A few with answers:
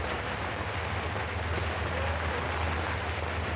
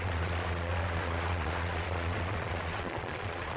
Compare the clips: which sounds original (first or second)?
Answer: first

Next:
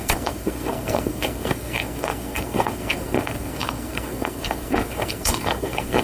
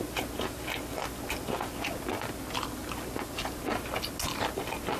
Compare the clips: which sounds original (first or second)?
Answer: second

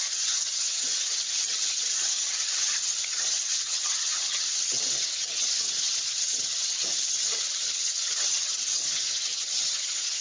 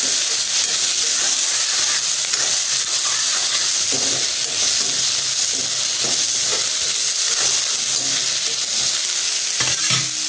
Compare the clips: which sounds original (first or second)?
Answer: second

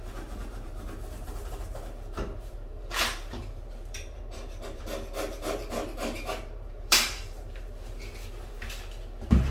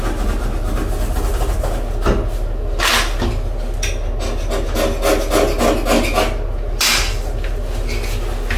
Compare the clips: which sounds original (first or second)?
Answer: second